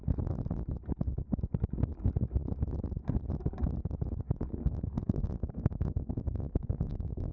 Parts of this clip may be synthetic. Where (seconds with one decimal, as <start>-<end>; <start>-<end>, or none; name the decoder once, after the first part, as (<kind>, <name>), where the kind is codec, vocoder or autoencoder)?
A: 4.5-7.3 (codec, SNAC)